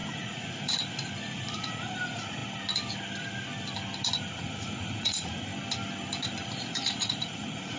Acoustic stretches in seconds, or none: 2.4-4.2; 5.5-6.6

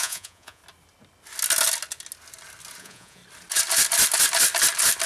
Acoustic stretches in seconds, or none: 0.6-2.8; 3.2-5.1